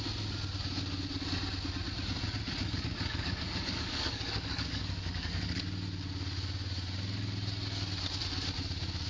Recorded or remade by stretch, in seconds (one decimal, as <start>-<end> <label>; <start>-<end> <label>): 0.0-2.6 recorded; 2.6-5.6 remade; 5.6-9.1 recorded